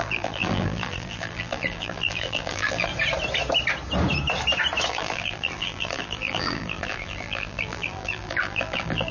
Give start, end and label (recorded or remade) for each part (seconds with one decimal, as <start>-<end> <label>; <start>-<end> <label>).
0.0-2.9 remade; 2.9-4.9 recorded; 4.9-9.1 remade